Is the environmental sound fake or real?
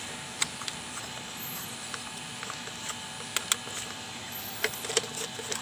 real